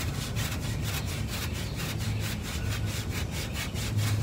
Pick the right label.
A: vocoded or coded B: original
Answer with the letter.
B